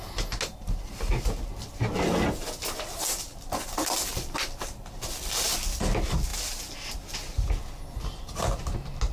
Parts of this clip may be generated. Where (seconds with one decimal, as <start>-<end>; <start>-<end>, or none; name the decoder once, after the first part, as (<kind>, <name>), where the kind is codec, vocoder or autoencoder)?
none

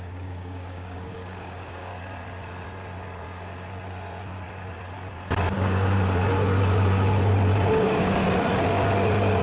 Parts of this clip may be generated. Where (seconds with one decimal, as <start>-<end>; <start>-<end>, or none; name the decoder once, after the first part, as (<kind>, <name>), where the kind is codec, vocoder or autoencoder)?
0.0-1.9 (codec, DAC); 5.5-6.2; 7.7-8.2

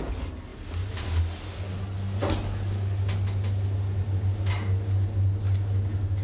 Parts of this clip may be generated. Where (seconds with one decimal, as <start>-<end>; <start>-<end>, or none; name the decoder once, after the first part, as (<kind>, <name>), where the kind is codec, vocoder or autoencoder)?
none

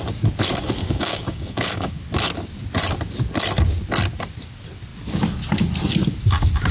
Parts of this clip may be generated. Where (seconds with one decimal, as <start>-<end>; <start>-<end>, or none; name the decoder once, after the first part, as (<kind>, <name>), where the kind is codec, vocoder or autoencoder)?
0.8-2.0 (codec, DAC)

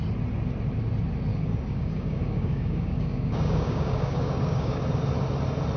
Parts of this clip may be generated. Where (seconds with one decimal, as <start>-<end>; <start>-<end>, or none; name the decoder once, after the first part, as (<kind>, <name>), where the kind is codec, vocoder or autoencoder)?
1.3-4.8 (codec, DAC)

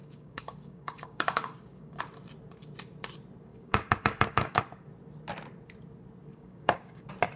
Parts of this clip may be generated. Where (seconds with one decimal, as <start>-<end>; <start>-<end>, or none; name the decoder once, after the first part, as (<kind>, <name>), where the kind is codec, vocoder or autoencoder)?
0.0-2.0 (codec, DAC); 3.5-4.6; 6.3-7.0